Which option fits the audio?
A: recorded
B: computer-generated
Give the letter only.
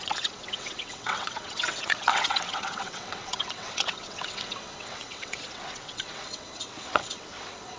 B